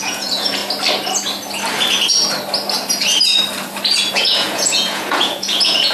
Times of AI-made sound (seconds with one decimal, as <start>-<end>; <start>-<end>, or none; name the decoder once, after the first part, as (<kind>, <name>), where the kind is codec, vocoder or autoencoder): 0.0-0.6 (vocoder, Vocos); 4.1-5.9